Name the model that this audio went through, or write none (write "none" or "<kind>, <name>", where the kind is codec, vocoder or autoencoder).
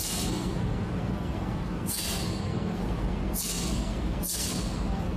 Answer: codec, SNAC